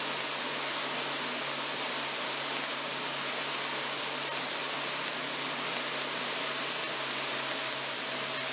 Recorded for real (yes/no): yes